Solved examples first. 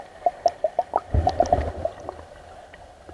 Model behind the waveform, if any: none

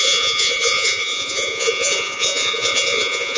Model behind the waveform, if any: vocoder, Vocos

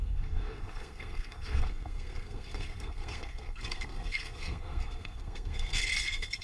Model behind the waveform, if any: codec, SNAC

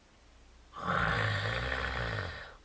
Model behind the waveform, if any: none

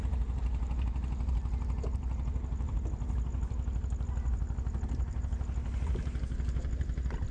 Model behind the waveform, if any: none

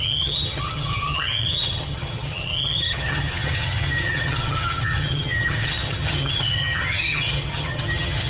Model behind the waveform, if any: vocoder, HiFi-GAN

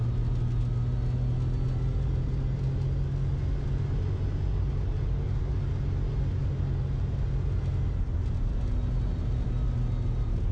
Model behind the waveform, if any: none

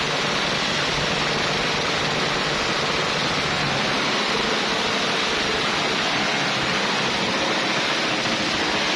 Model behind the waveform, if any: none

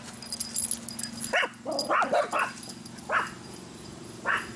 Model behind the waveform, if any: none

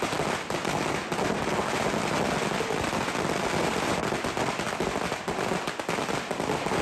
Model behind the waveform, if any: none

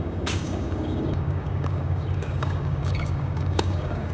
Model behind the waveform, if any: codec, DAC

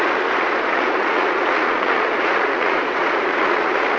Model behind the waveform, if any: vocoder, Vocos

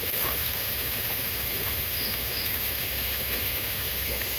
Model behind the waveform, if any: autoencoder, DAC-VAE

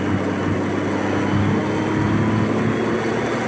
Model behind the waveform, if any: none